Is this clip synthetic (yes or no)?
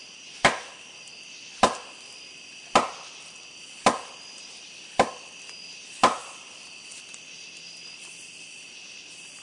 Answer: no